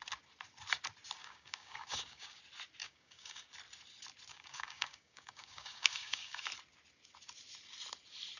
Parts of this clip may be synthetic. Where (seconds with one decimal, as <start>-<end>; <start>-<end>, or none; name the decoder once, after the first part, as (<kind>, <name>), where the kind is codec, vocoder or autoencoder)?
1.2-2.4 (codec, DAC); 2.8-3.5; 4.3-6.5